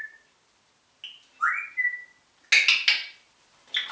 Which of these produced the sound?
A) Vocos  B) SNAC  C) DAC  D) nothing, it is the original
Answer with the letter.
D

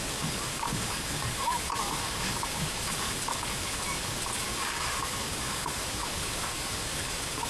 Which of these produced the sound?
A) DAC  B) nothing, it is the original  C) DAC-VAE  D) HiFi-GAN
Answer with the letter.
A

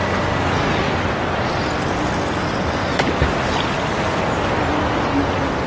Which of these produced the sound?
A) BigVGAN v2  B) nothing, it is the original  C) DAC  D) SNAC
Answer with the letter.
B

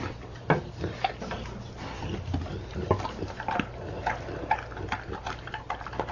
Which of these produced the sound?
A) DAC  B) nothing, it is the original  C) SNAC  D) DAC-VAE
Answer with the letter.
B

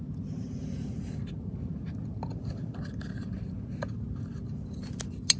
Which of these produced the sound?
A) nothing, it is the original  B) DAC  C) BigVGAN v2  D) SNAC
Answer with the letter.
A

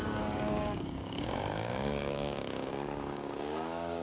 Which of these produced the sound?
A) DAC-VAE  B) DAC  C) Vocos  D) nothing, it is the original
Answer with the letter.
B